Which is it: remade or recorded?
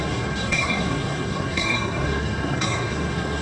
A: remade